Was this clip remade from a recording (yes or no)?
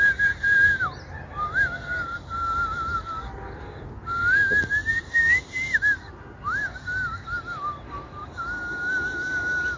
no